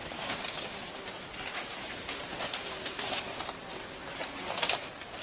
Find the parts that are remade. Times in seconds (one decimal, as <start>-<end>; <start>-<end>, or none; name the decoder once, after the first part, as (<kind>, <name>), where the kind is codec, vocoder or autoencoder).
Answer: 1.7-3.2 (vocoder, BigVGAN v2)